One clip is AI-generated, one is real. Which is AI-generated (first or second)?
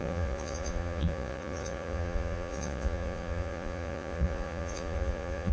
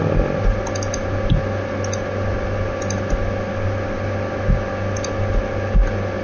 first